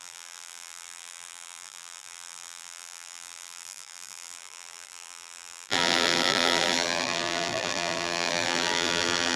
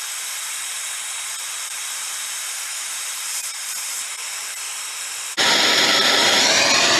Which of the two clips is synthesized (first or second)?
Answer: first